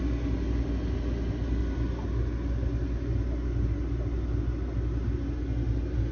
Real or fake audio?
real